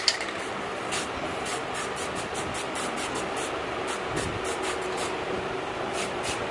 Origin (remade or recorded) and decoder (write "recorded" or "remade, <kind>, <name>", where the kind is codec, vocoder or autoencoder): remade, vocoder, BigVGAN v2